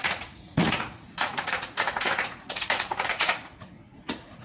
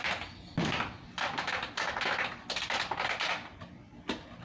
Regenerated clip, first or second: first